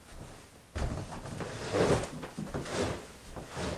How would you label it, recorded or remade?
recorded